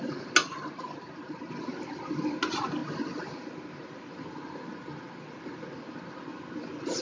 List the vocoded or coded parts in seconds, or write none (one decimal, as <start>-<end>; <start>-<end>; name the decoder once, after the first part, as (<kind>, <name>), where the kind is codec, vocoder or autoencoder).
none